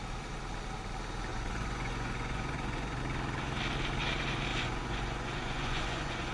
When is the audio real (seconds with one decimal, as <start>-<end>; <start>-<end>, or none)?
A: 0.0-1.3; 3.0-4.5